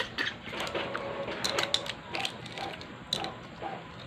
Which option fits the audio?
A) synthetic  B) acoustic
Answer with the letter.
B